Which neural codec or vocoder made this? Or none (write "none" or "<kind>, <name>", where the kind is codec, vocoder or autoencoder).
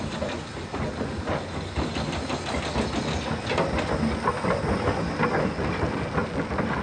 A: none